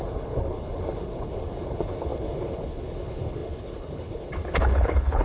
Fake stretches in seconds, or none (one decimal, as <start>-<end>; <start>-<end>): 0.0-5.2